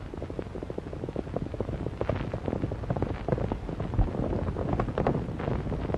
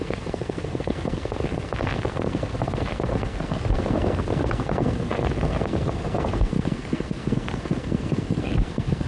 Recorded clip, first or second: first